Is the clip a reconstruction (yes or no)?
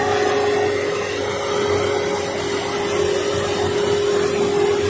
no